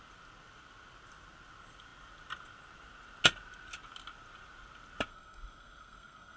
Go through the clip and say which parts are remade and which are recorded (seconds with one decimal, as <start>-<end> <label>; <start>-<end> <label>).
0.0-5.1 recorded; 5.1-6.4 remade